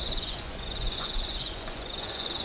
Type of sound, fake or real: fake